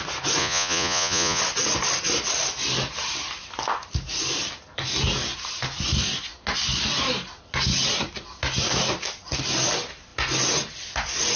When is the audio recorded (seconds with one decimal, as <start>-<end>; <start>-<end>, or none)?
0.0-0.4; 1.4-11.4